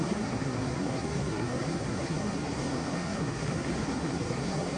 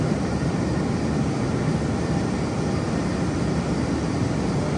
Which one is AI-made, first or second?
first